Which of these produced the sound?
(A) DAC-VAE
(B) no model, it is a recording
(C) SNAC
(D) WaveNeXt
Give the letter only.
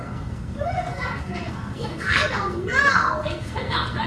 C